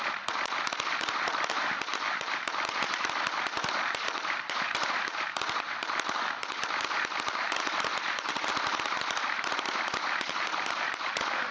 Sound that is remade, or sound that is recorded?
remade